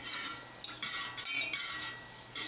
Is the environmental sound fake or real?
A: real